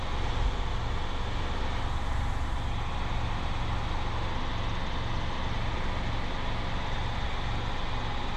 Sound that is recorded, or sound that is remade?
recorded